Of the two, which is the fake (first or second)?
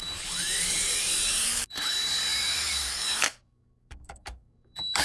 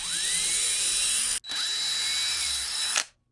first